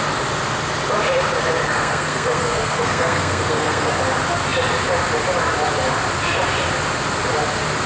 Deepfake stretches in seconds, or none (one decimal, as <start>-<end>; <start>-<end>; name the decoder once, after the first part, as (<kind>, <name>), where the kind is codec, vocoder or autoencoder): 1.6-3.9 (codec, SNAC)